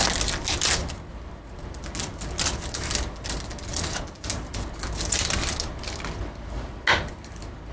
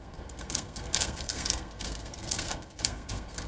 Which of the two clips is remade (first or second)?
second